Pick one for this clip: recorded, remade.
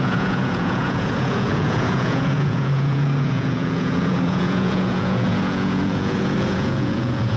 remade